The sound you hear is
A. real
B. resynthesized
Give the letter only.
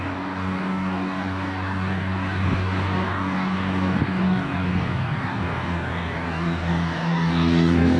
B